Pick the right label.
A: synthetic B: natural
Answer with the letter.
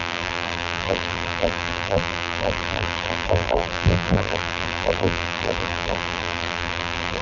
A